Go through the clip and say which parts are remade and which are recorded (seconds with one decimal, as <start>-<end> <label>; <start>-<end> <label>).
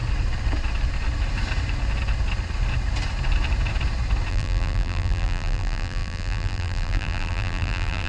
0.0-4.3 recorded; 4.3-8.1 remade